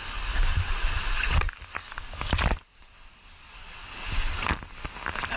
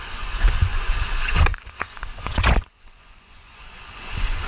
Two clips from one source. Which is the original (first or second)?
first